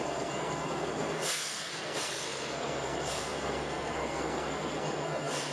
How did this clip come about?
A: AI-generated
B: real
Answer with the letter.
A